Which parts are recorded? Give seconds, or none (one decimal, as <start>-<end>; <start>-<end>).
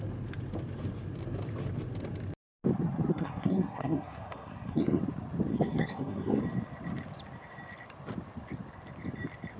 0.0-3.1; 5.0-5.5; 6.4-9.6